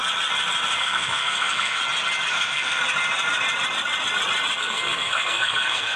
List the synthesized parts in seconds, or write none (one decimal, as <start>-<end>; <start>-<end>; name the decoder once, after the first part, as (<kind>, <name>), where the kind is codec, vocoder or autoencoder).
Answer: 0.8-1.8 (codec, SNAC); 2.3-2.8; 4.6-6.0